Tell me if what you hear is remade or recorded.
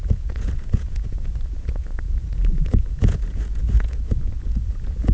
remade